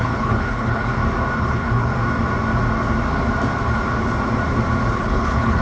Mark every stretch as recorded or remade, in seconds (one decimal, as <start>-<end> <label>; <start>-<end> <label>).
0.0-0.9 remade; 0.9-1.4 recorded; 1.4-1.9 remade; 1.9-4.9 recorded; 4.9-5.6 remade